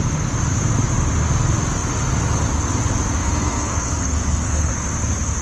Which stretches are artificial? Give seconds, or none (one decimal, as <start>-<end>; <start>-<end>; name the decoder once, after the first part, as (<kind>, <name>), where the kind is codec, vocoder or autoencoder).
3.2-4.7 (codec, SNAC)